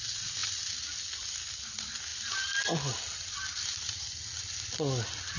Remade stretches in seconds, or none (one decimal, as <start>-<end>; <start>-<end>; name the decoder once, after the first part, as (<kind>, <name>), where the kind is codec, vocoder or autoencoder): none